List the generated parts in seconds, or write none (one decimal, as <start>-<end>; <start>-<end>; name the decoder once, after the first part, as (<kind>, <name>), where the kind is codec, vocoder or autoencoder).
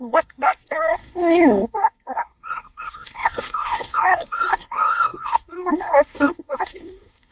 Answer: 0.0-7.3 (codec, SNAC)